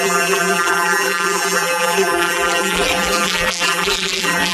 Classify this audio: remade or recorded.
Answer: remade